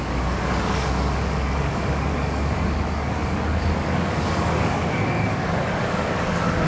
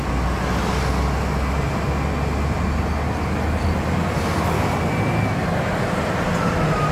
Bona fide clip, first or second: second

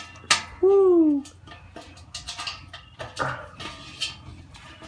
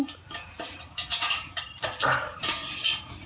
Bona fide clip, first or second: first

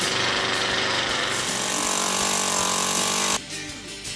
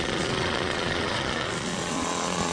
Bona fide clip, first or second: first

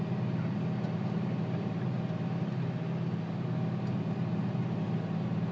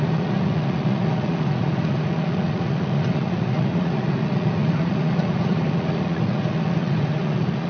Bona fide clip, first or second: first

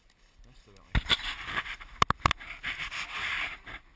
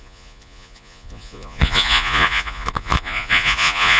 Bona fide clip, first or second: first